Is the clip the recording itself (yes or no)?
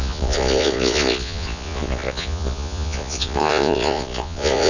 no